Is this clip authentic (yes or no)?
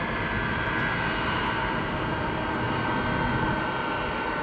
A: yes